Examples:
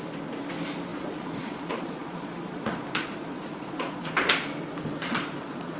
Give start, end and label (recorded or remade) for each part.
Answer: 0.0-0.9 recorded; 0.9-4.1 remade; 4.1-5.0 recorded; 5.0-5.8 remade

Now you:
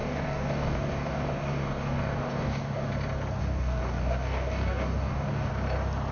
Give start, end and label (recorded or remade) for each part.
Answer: 0.0-2.9 remade; 2.9-3.4 recorded; 3.4-5.5 remade; 5.5-6.1 recorded